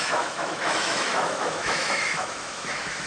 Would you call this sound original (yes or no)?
no